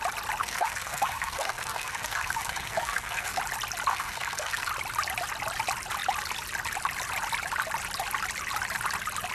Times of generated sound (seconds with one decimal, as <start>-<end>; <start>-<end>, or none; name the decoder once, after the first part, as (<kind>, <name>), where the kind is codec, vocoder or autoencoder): 0.4-3.4 (codec, SNAC); 3.9-4.7